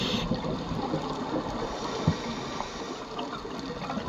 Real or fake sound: real